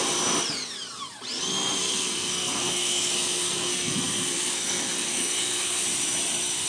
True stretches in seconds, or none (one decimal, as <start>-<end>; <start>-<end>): 0.0-1.8; 5.8-6.7